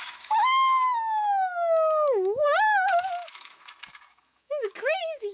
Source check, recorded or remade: remade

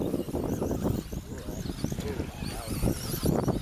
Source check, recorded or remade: recorded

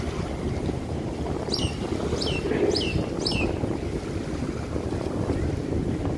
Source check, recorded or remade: recorded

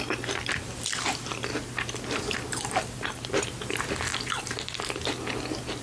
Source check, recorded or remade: recorded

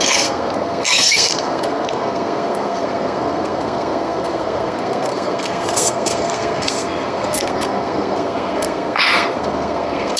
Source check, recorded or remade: remade